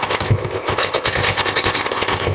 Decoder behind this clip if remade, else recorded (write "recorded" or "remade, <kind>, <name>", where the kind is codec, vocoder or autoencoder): remade, codec, ZipCodec